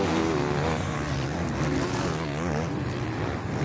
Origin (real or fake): real